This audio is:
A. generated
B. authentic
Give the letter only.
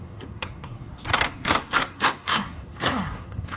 A